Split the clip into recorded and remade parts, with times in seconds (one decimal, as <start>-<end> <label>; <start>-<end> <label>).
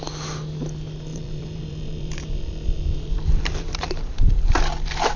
0.0-1.1 recorded; 1.1-4.1 remade; 4.1-5.2 recorded